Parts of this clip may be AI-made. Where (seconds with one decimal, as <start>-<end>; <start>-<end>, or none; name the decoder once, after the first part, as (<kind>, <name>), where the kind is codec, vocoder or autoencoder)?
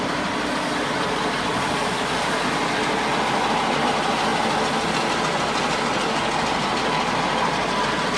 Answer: none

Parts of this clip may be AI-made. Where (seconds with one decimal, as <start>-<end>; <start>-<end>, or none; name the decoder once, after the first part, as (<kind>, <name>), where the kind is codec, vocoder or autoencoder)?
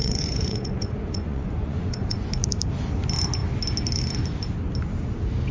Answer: 0.0-2.3 (vocoder, Vocos)